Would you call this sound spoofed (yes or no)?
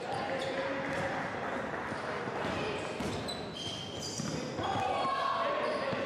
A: no